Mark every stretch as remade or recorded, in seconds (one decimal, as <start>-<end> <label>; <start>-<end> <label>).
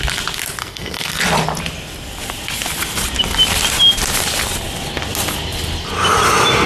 0.0-0.6 recorded; 0.6-1.2 remade; 1.2-6.7 recorded